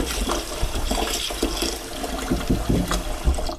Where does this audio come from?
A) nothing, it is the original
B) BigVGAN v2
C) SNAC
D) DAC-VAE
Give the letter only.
A